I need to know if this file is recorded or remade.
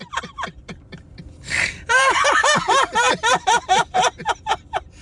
remade